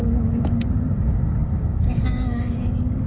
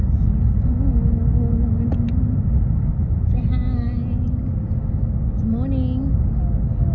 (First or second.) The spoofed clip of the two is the first